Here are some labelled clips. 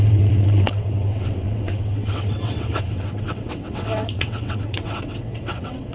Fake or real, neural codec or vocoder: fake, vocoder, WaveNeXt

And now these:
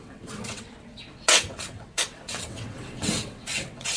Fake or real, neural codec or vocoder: fake, vocoder, WaveNeXt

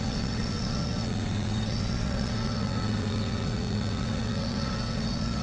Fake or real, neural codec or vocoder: fake, vocoder, WaveNeXt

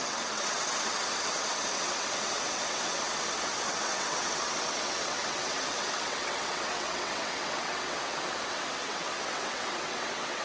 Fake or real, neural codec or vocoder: fake, vocoder, WaveNeXt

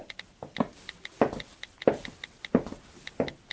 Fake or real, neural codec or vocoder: real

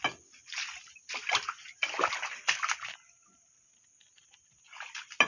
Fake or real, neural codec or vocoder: real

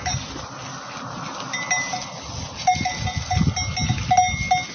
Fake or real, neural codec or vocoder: real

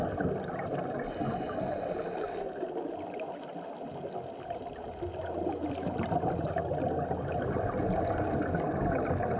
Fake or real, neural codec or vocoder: real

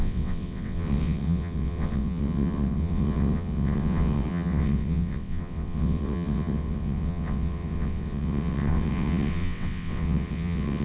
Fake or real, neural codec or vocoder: fake, vocoder, WaveNeXt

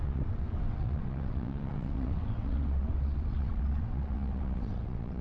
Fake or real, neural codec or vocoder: fake, vocoder, WaveNeXt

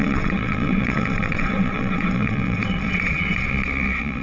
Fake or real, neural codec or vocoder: fake, vocoder, WaveNeXt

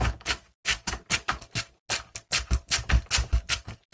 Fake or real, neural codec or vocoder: real